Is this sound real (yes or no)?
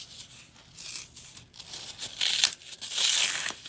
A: yes